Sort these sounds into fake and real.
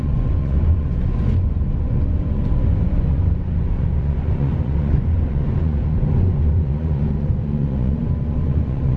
fake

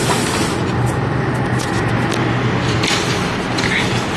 real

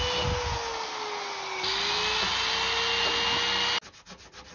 real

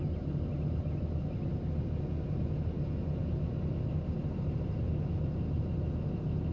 real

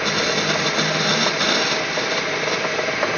real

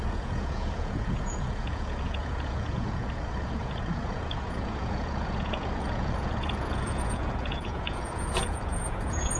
fake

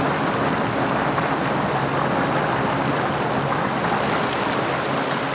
real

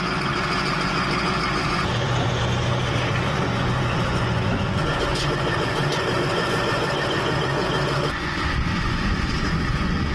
fake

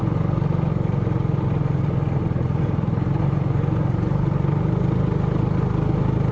real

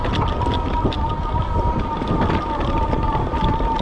real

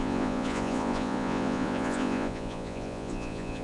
fake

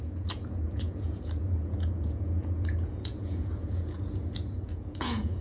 fake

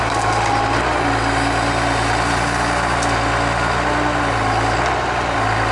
real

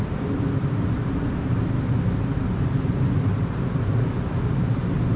real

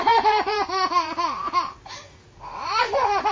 fake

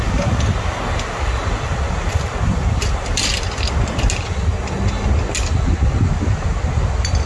real